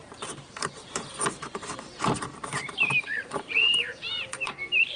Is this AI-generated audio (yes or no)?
yes